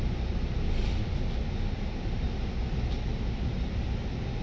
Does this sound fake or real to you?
real